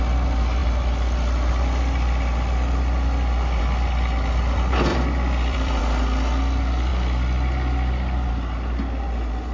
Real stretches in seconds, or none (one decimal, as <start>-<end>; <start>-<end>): 0.0-0.6; 3.6-4.9; 5.8-9.5